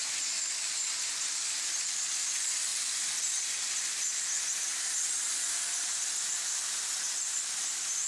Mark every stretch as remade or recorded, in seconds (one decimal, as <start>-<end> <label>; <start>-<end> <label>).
0.0-8.1 recorded